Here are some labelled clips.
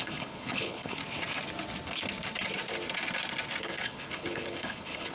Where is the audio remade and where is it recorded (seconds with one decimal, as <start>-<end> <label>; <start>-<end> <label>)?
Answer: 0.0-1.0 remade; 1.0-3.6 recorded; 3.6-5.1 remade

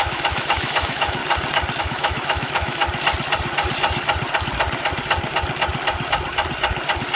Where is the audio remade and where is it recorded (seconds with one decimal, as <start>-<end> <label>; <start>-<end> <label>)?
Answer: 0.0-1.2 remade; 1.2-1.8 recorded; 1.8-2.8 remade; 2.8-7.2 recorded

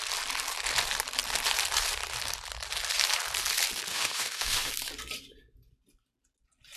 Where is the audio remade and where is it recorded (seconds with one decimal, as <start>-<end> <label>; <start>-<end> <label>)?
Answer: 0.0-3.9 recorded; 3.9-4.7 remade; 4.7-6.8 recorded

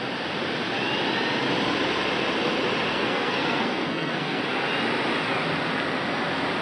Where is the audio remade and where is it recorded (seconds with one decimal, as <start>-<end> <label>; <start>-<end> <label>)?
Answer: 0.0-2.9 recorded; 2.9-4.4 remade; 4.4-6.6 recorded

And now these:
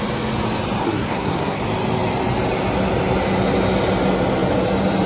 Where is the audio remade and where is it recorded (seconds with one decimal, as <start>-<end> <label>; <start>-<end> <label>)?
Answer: 0.0-0.8 recorded; 0.8-1.6 remade; 1.6-5.1 recorded